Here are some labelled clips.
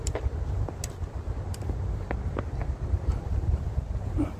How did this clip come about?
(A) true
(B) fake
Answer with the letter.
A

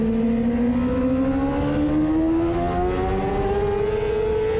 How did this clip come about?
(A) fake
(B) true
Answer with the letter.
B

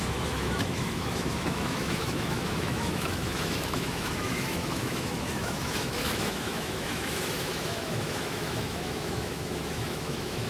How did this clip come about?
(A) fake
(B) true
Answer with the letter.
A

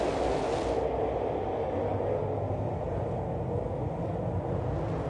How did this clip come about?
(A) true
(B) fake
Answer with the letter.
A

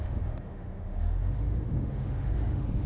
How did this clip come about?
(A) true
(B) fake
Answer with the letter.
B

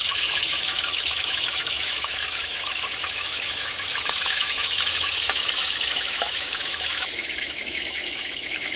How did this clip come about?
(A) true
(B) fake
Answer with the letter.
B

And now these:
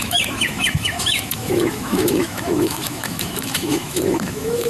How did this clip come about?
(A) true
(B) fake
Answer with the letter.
B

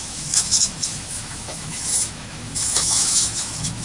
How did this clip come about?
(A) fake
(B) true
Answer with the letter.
A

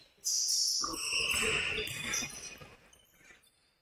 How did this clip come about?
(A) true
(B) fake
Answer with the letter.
A